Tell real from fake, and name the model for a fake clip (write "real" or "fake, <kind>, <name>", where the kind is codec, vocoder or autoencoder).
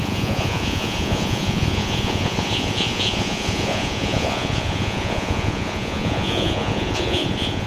fake, vocoder, Vocos